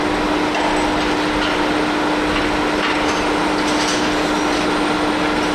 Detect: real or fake real